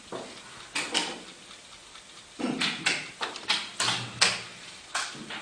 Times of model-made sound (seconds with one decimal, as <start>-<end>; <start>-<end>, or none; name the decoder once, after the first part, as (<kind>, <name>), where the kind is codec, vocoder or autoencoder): 1.0-3.2 (vocoder, BigVGAN v2)